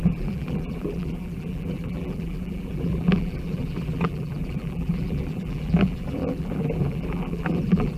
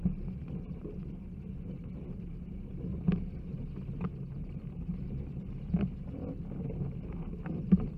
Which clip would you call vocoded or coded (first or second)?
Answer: first